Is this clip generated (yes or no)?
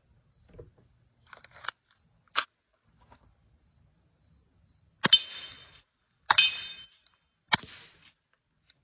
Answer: no